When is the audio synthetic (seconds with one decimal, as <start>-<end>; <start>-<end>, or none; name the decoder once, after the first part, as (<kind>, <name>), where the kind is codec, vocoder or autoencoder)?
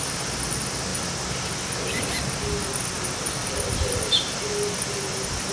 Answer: 3.4-5.5 (vocoder, BigVGAN v2)